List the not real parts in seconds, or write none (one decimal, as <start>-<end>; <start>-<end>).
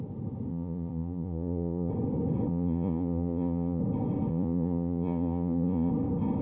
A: 0.5-1.9; 2.5-3.8; 4.3-5.9